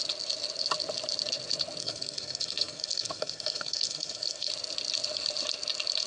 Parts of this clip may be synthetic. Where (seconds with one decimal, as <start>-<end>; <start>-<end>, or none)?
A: 1.8-4.5